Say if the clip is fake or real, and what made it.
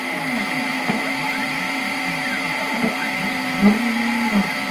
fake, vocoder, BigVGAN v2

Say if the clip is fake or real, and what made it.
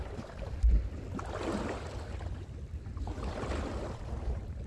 real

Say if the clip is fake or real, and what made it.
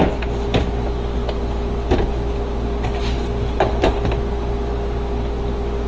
real